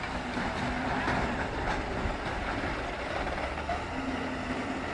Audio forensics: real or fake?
real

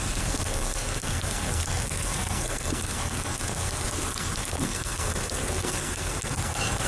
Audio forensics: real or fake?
fake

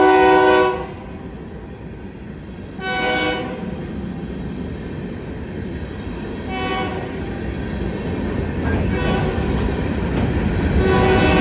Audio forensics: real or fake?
real